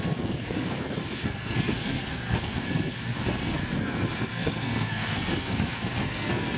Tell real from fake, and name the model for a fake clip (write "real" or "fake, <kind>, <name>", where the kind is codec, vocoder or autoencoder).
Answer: fake, codec, SNAC